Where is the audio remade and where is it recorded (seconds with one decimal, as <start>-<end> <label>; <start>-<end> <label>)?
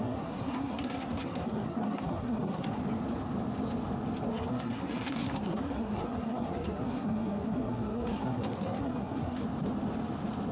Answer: 0.0-2.8 remade; 2.8-4.3 recorded; 4.3-9.4 remade; 9.4-10.5 recorded